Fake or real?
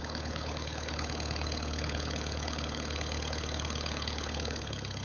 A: fake